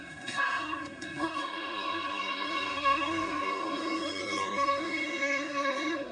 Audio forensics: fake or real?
fake